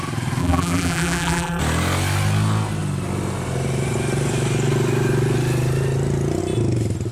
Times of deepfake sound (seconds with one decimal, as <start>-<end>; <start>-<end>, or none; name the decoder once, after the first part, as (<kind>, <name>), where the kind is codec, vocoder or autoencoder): 0.4-1.6 (vocoder, BigVGAN v2)